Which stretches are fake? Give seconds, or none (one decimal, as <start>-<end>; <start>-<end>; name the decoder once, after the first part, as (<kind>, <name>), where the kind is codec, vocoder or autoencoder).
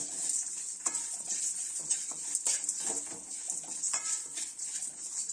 0.8-2.2 (vocoder, Vocos); 3.7-5.3